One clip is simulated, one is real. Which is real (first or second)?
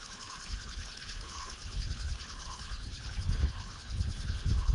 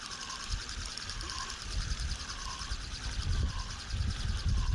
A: second